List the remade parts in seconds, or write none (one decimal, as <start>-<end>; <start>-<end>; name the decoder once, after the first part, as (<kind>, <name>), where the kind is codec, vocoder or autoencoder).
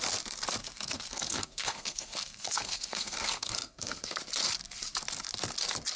0.6-4.2 (codec, SNAC)